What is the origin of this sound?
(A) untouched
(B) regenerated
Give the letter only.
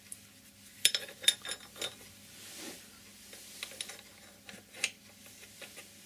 A